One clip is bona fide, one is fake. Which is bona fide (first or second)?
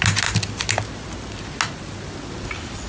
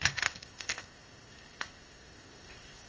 first